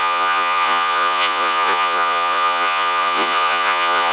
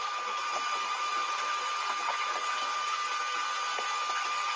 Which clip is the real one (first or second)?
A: second